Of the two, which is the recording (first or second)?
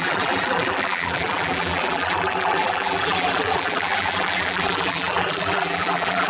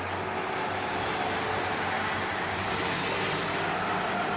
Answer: second